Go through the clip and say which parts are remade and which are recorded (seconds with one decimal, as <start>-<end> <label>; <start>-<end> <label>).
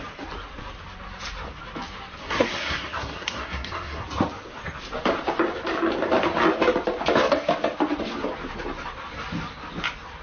0.0-2.2 recorded; 2.2-4.0 remade; 4.0-10.2 recorded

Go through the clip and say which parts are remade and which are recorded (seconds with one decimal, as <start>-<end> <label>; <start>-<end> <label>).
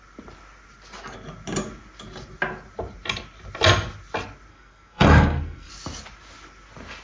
0.0-4.5 recorded; 4.5-5.7 remade; 5.7-7.0 recorded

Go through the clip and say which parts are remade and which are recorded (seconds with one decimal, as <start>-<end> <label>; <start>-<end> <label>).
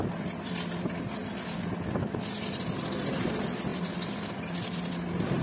0.0-5.4 recorded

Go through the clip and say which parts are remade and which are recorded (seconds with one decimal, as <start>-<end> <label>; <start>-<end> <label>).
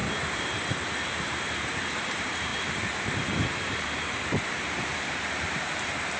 0.0-6.2 remade